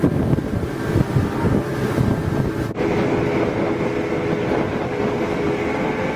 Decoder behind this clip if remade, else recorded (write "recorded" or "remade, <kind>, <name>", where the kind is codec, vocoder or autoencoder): recorded